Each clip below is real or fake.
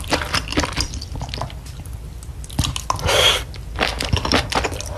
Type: real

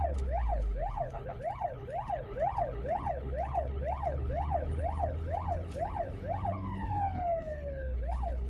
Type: fake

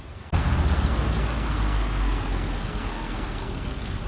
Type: fake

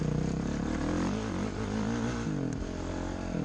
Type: real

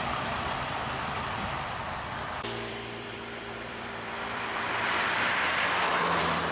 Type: fake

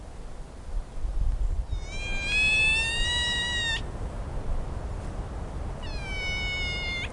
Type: real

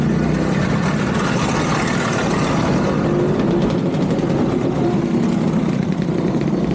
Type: real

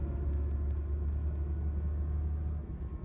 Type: real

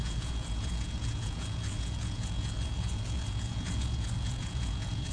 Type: fake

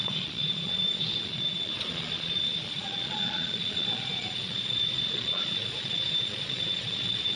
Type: fake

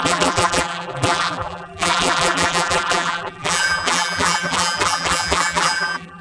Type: fake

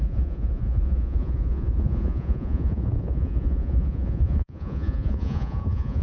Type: fake